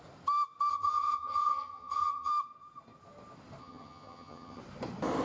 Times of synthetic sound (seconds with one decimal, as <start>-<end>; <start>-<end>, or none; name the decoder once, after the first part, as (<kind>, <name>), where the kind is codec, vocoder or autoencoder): 0.7-2.3 (vocoder, HiFi-GAN); 3.6-4.6